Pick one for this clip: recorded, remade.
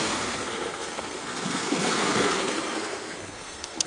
remade